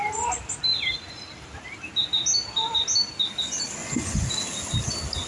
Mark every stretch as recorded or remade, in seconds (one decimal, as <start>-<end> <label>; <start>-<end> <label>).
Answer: 0.0-3.8 recorded; 3.8-4.3 remade; 4.3-5.3 recorded